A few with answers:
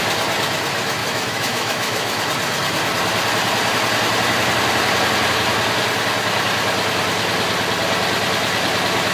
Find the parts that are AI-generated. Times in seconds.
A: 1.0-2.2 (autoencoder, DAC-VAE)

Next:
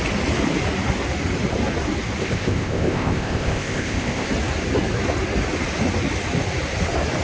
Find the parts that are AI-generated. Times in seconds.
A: 2.2-4.3 (codec, ZipCodec)

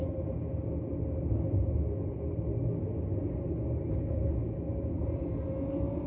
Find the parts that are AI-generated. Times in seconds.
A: none

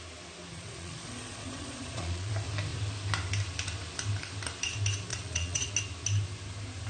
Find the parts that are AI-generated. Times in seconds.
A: 0.5-2.3 (vocoder, Vocos); 5.1-5.7